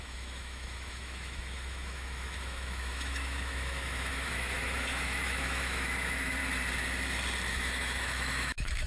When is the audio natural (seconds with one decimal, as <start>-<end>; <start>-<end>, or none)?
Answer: 6.4-7.5